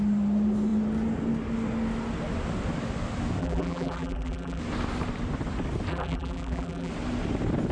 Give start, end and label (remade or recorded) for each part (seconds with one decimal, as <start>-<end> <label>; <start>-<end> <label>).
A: 0.0-3.4 recorded; 3.4-4.6 remade; 4.6-5.9 recorded; 5.9-6.9 remade; 6.9-7.7 recorded